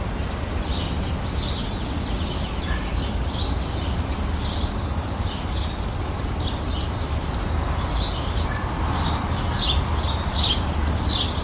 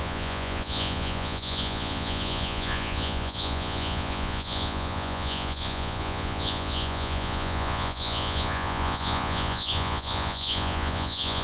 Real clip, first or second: first